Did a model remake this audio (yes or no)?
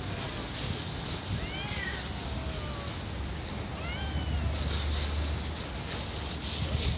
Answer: no